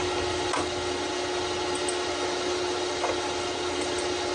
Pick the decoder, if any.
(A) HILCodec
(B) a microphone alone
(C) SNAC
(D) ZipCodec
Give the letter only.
B